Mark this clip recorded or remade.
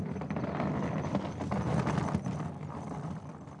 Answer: recorded